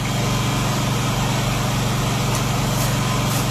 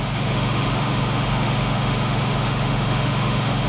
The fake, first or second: second